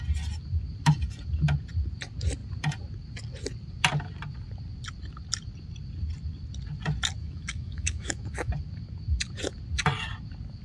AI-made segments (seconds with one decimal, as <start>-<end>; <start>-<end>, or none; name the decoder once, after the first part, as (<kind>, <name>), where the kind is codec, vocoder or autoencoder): 7.2-8.5 (autoencoder, DAC-VAE)